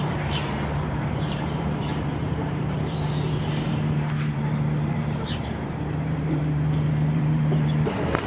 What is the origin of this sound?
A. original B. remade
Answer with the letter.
B